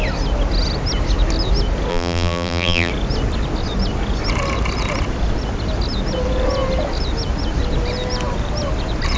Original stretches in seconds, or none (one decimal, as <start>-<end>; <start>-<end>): 0.0-1.9; 2.9-9.2